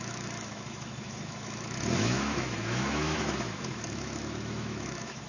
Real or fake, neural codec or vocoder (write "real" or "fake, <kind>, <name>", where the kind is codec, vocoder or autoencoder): fake, autoencoder, DAC-VAE